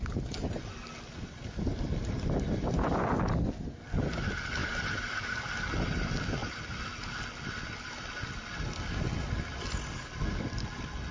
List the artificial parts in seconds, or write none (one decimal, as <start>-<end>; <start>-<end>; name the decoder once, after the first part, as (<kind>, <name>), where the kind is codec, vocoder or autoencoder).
4.6-5.5 (vocoder, BigVGAN v2)

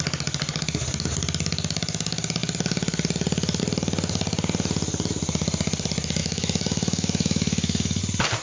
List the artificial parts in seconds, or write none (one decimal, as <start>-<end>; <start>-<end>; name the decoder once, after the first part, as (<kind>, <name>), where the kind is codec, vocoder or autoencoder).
6.2-8.0 (autoencoder, DAC-VAE)

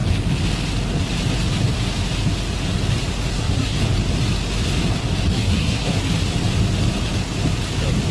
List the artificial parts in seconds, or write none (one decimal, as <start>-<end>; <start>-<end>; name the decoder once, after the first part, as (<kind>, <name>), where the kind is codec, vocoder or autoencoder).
3.3-3.8 (codec, SNAC); 5.3-6.1